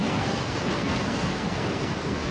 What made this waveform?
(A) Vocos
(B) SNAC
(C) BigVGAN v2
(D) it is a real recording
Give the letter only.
B